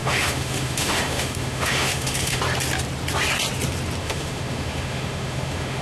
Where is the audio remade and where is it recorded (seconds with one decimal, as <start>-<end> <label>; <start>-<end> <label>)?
0.0-2.4 remade; 2.4-4.0 recorded; 4.0-5.8 remade